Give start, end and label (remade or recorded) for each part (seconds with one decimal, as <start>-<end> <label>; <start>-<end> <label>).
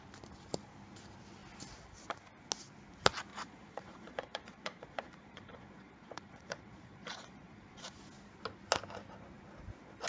0.0-3.3 recorded; 3.3-8.0 remade; 8.0-10.1 recorded